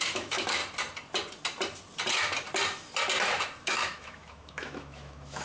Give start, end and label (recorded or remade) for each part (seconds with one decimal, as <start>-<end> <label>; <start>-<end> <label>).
0.0-0.6 remade; 0.6-3.6 recorded; 3.6-5.4 remade